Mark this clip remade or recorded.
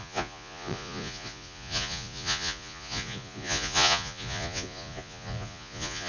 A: remade